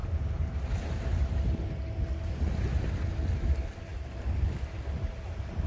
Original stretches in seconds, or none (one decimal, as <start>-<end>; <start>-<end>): 0.0-5.7